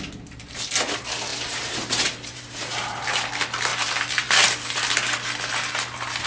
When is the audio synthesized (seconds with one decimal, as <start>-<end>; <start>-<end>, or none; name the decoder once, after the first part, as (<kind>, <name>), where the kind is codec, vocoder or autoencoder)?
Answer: 1.3-3.1 (vocoder, BigVGAN v2)